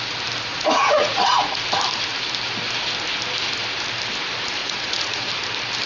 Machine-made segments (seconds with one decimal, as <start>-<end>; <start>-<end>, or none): 0.5-1.6; 4.6-5.3